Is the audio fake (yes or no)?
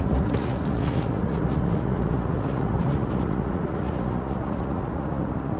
yes